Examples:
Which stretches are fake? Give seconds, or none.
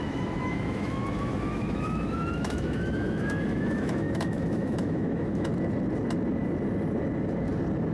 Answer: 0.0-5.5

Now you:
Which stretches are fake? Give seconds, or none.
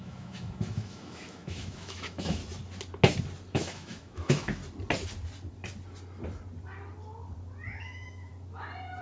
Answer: 0.0-2.4; 3.5-4.6; 7.8-8.3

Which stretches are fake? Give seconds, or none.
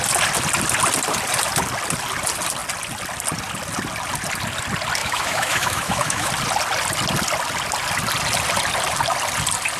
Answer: 5.0-6.3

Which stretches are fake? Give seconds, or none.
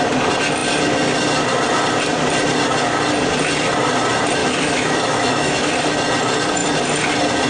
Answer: 4.4-5.7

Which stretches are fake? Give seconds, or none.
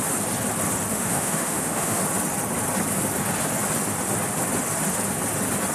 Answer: 0.9-2.0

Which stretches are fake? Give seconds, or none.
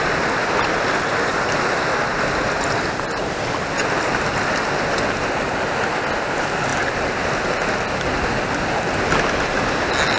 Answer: none